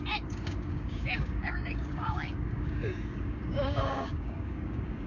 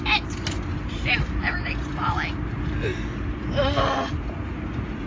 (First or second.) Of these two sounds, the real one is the second